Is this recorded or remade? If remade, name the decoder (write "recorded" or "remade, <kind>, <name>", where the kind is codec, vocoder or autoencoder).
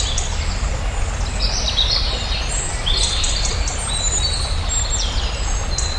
recorded